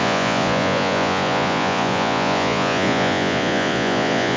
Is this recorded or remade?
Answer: remade